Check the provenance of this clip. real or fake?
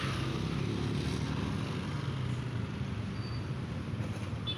real